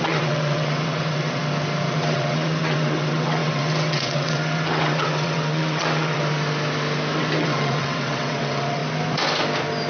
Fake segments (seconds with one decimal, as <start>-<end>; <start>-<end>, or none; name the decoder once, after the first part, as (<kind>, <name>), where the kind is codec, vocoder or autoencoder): 0.0-1.4 (vocoder, WaveNeXt); 1.9-6.2; 7.4-8.8